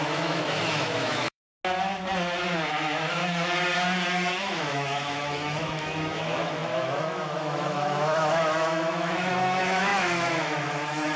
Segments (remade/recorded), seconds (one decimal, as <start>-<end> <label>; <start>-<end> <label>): 0.0-1.5 remade; 1.5-2.7 recorded; 2.7-3.2 remade; 3.2-4.4 recorded; 4.4-11.2 remade